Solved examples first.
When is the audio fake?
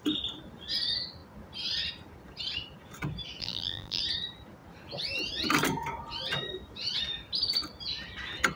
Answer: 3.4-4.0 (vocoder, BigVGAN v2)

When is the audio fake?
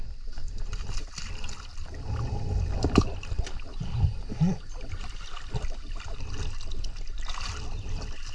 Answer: none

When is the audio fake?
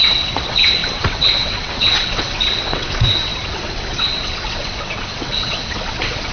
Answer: 0.0-6.3 (vocoder, WaveNeXt)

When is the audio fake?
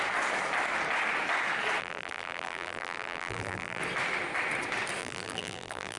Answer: 1.8-3.8 (vocoder, BigVGAN v2); 5.0-6.0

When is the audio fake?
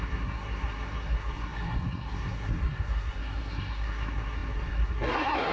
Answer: 0.0-5.5 (codec, SNAC)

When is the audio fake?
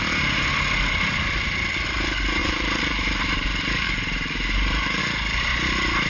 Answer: 2.4-5.0 (vocoder, BigVGAN v2)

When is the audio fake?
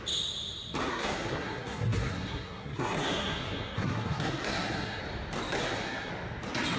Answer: 0.9-5.0 (codec, SNAC); 5.6-6.1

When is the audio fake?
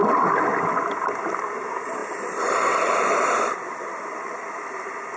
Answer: 1.3-5.2 (vocoder, BigVGAN v2)